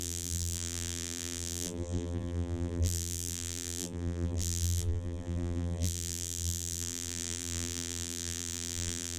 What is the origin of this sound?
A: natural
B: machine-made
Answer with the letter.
B